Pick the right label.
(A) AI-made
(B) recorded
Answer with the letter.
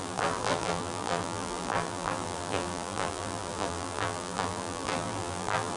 A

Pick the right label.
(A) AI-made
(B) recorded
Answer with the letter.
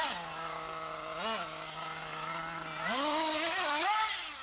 B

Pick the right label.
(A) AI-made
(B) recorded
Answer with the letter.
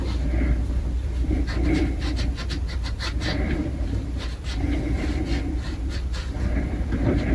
A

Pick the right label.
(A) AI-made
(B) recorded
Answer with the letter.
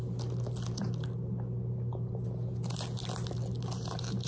B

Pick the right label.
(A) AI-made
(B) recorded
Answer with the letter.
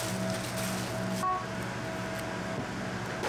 B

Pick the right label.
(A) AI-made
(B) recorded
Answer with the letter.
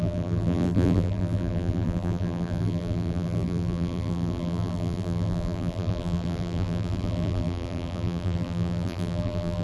A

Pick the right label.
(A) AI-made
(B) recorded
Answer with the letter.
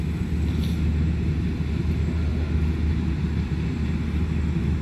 B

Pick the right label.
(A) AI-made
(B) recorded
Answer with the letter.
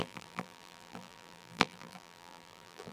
A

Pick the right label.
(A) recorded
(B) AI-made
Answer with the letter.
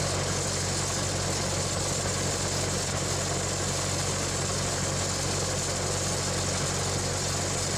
A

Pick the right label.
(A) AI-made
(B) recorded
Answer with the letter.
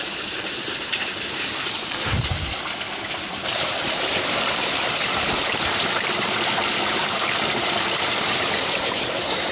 A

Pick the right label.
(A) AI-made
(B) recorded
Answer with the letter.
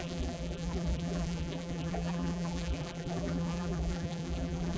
A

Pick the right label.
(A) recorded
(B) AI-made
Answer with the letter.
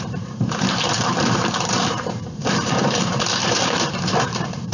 B